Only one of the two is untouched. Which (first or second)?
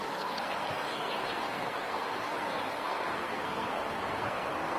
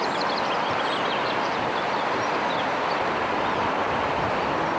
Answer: second